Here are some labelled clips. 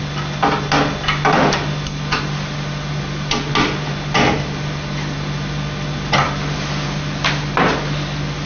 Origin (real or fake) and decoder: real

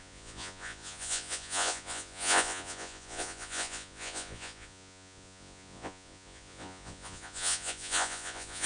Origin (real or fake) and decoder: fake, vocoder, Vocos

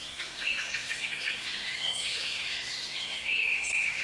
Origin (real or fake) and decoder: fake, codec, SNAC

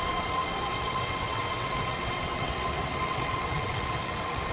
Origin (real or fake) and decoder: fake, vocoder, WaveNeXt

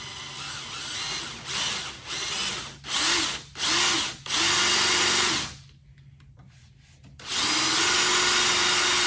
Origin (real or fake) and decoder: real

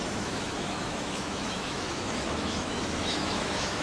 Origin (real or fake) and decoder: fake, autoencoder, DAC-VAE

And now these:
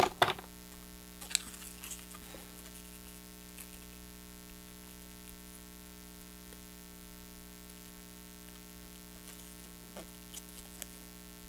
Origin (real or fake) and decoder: real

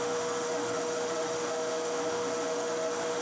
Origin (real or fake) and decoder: fake, autoencoder, DAC-VAE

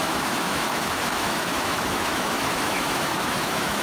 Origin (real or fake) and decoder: fake, autoencoder, DAC-VAE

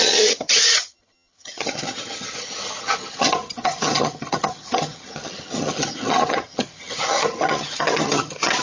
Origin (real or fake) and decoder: fake, vocoder, HiFi-GAN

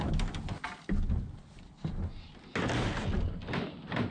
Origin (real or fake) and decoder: real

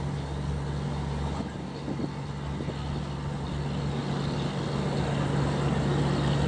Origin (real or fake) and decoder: real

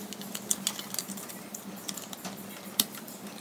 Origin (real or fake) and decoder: real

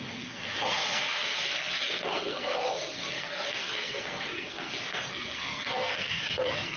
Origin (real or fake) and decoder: fake, codec, SNAC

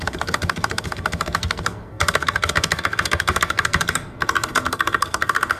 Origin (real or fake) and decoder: fake, codec, SNAC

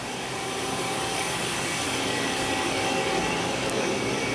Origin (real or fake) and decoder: fake, codec, DAC